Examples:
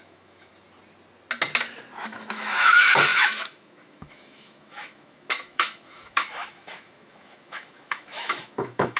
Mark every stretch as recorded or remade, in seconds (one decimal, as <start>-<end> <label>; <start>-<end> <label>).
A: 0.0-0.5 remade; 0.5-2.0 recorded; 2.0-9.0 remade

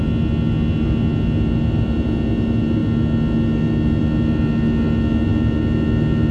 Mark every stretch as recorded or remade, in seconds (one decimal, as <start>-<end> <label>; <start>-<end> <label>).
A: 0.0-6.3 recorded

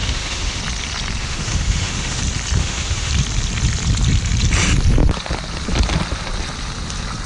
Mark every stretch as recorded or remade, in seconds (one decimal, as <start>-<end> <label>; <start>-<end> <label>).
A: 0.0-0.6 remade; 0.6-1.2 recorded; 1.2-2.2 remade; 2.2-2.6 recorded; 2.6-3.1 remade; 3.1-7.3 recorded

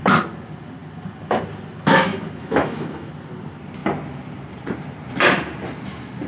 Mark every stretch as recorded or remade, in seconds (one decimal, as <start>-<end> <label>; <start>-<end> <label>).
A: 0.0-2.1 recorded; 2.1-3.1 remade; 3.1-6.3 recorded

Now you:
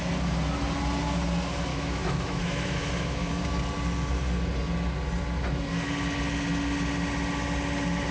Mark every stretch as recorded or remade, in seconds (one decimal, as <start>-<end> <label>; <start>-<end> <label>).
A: 0.0-1.7 recorded; 1.7-3.3 remade; 3.3-8.1 recorded

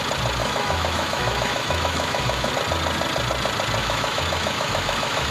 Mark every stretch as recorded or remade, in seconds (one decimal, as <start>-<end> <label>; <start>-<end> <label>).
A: 0.0-0.4 recorded; 0.4-2.5 remade; 2.5-3.8 recorded; 3.8-5.3 remade